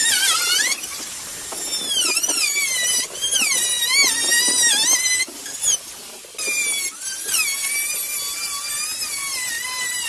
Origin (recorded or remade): recorded